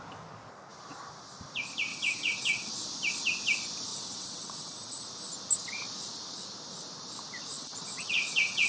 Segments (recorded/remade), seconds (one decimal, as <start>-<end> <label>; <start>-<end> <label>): 0.0-1.9 recorded; 1.9-2.7 remade; 2.7-3.9 recorded; 3.9-5.0 remade; 5.0-7.5 recorded; 7.5-8.7 remade